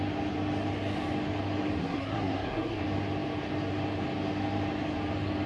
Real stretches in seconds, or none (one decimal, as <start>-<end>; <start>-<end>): 0.0-1.8; 2.8-5.5